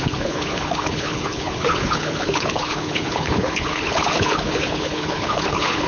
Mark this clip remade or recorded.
remade